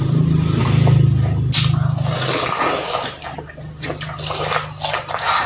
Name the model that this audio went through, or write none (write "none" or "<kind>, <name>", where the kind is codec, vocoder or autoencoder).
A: none